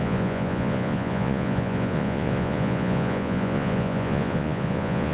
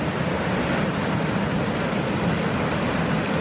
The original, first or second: second